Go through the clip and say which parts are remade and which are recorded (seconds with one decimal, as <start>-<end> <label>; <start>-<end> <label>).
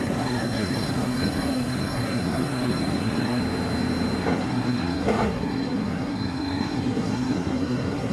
0.0-3.4 remade; 3.4-4.2 recorded; 4.2-8.1 remade